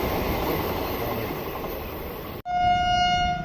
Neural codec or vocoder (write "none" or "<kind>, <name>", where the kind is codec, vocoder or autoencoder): none